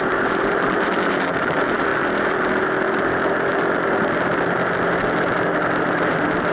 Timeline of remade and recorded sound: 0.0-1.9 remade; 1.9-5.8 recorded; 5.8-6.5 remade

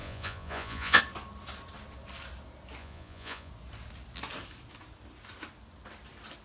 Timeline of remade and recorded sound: 0.0-1.0 remade; 1.0-2.8 recorded; 2.8-3.5 remade; 3.5-6.4 recorded

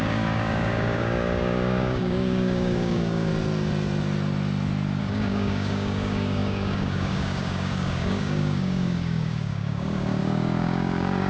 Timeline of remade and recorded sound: 0.0-3.3 remade; 3.3-5.0 recorded; 5.0-11.3 remade

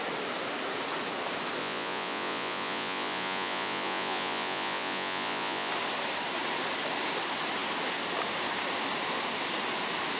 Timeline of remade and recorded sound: 0.0-1.6 recorded; 1.6-5.7 remade; 5.7-10.2 recorded

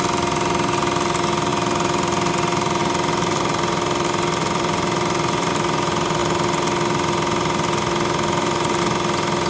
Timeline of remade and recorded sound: 0.0-2.8 recorded; 2.8-5.5 remade; 5.5-9.5 recorded